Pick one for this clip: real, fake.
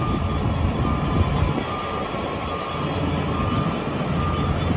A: real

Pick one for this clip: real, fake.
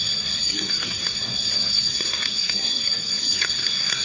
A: fake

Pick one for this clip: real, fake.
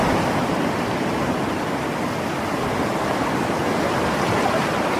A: real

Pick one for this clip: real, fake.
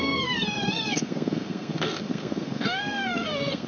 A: fake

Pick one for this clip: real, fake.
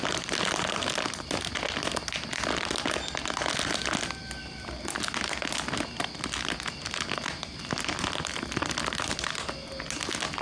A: real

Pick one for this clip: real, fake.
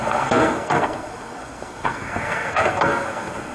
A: fake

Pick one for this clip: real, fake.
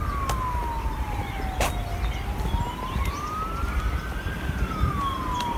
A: real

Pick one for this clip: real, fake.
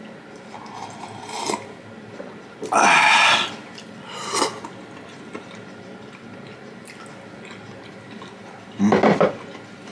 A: real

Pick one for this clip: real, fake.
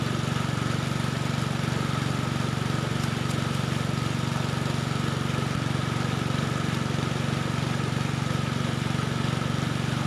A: real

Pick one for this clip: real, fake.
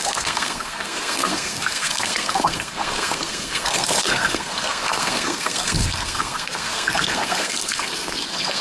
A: fake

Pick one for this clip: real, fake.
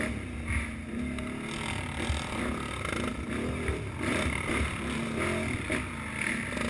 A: real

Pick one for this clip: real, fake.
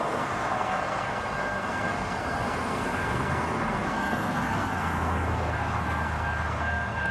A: fake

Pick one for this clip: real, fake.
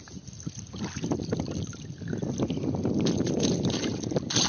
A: real